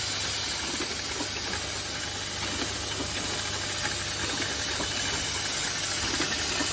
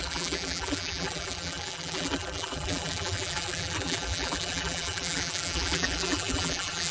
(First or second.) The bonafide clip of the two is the first